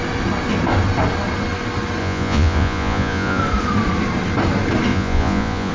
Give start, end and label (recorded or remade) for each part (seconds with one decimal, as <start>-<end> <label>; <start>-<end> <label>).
0.0-2.0 recorded; 2.0-3.4 remade; 3.4-4.9 recorded; 4.9-5.7 remade